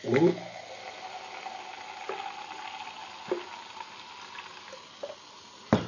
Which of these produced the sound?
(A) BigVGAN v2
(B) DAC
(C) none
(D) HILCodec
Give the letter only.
C